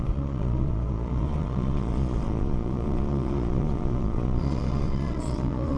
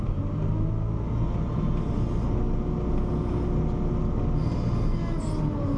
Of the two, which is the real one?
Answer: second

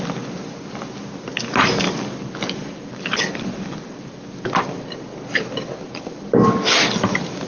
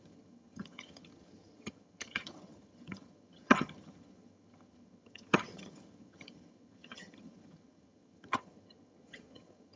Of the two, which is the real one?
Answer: first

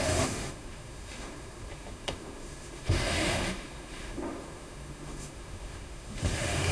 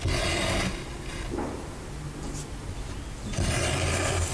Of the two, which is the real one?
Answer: second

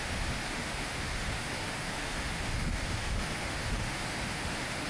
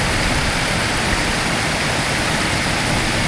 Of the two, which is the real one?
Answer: second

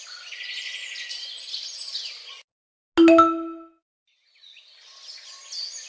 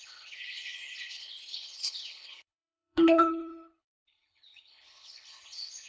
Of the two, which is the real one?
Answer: first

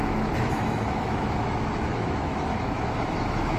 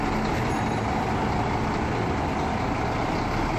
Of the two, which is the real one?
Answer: second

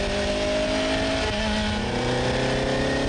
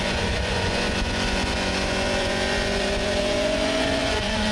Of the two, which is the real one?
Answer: first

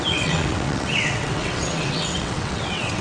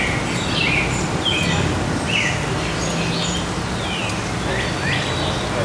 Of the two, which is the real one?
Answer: second